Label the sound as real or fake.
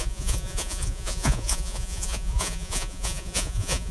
fake